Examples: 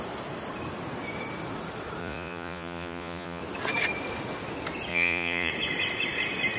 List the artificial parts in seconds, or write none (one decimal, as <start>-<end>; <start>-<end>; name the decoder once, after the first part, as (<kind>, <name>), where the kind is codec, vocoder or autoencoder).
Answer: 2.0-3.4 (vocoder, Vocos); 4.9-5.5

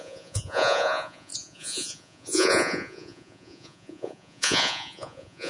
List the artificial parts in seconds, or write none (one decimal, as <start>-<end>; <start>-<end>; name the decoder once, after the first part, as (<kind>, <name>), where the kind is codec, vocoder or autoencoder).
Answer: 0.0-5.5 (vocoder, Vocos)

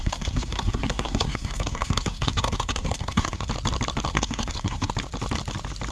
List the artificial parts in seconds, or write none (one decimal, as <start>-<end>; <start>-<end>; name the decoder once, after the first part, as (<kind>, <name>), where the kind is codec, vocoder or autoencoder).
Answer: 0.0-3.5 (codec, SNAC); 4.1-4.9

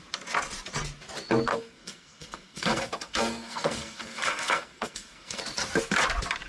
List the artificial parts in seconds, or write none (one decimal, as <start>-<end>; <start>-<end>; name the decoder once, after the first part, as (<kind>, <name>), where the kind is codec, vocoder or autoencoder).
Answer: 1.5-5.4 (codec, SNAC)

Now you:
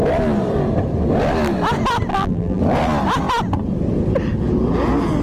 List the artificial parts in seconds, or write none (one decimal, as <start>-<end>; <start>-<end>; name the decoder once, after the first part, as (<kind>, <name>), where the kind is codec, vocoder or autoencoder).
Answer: 2.1-2.6 (vocoder, BigVGAN v2)

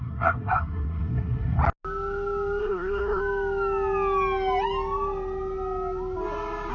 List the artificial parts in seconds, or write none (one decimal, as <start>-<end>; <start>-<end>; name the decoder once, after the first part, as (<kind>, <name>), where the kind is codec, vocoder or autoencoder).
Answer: 0.0-1.6 (codec, SNAC); 2.6-3.2